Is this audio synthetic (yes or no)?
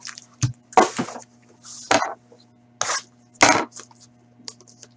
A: no